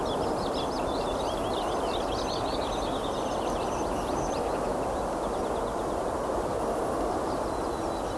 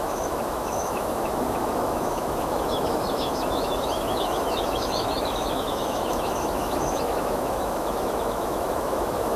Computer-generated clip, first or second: second